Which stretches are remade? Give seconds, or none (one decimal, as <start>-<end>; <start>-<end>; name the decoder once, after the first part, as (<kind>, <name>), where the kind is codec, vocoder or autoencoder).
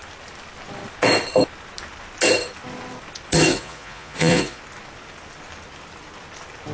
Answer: 3.5-4.6 (vocoder, Vocos)